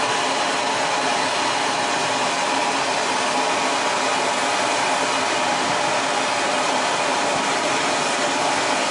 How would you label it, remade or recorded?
recorded